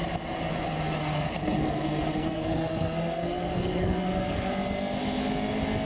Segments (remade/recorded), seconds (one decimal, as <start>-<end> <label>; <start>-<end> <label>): 0.0-1.0 recorded; 1.0-4.5 remade; 4.5-5.9 recorded